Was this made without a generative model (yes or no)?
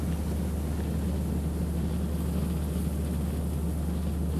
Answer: yes